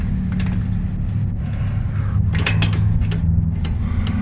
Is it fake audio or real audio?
real